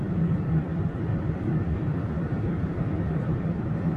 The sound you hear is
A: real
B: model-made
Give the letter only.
B